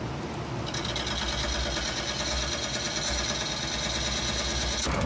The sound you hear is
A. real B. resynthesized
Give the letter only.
A